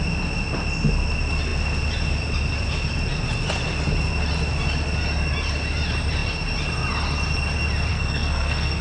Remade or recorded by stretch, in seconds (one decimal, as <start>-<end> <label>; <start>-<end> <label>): 0.0-7.9 recorded; 7.9-8.8 remade